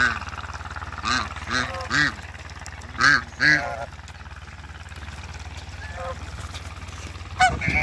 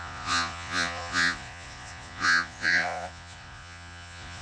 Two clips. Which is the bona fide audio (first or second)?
first